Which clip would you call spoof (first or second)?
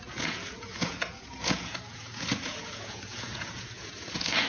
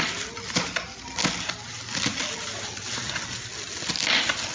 first